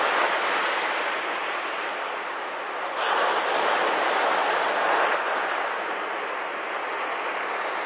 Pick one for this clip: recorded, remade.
recorded